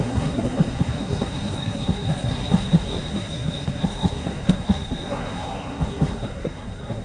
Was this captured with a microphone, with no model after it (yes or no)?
no